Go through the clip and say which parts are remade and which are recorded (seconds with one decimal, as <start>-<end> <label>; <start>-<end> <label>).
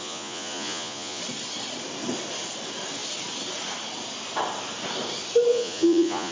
0.0-1.2 remade; 1.2-5.5 recorded; 5.5-6.3 remade